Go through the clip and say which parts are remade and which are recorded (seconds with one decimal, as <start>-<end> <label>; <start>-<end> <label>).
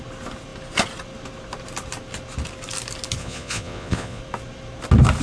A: 0.0-3.2 recorded; 3.2-4.2 remade; 4.2-5.2 recorded